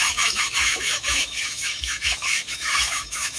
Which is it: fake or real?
fake